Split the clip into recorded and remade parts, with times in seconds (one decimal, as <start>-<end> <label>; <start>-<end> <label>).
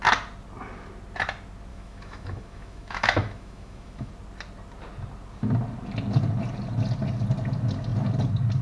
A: 0.0-1.7 recorded; 1.7-4.1 remade; 4.1-8.6 recorded